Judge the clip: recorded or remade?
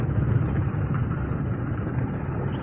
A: recorded